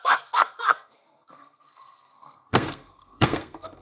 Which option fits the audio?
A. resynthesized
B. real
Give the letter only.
A